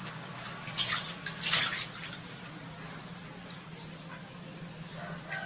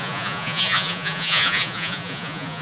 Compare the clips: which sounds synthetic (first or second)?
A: second